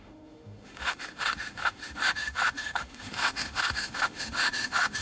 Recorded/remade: remade